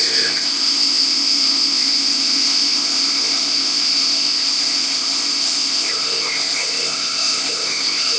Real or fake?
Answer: fake